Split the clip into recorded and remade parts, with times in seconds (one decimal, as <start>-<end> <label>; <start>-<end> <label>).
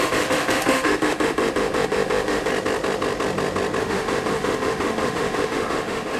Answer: 0.0-2.5 remade; 2.5-3.8 recorded; 3.8-6.2 remade